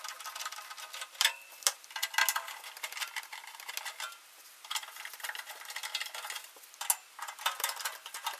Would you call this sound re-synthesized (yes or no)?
no